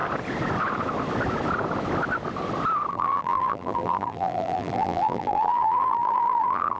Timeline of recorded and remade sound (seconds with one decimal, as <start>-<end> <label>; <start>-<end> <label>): 0.0-2.9 recorded; 2.9-6.8 remade